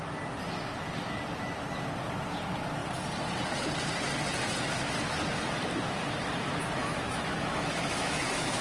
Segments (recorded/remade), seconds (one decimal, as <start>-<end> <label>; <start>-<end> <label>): 0.0-6.8 recorded; 6.8-8.6 remade